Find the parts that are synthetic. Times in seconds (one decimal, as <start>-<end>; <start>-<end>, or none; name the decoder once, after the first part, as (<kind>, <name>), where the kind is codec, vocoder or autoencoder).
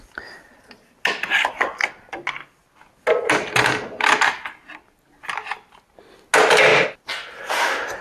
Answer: none